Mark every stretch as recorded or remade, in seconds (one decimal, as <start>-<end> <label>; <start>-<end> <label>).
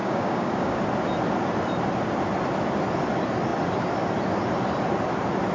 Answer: 0.0-0.8 remade; 0.8-5.5 recorded